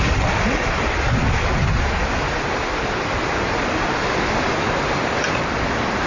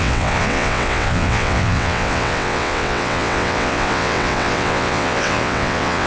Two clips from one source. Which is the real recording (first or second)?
first